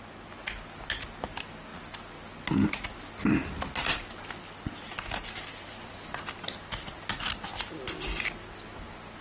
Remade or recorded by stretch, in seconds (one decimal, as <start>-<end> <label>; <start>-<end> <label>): 0.0-9.2 recorded